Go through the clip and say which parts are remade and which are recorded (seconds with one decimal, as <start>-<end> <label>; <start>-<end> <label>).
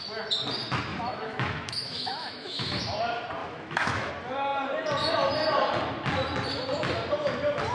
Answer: 0.0-0.9 recorded; 0.9-2.8 remade; 2.8-3.4 recorded; 3.4-4.1 remade; 4.1-7.7 recorded